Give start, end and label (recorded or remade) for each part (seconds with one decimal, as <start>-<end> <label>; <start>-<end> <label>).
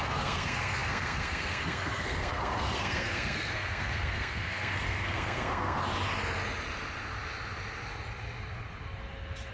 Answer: 0.0-5.8 remade; 5.8-9.5 recorded